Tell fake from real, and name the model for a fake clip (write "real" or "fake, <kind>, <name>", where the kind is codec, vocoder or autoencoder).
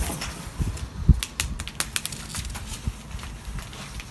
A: real